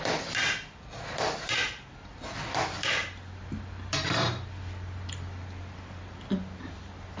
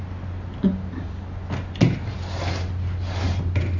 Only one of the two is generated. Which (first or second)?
first